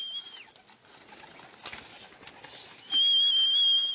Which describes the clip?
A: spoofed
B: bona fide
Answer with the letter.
B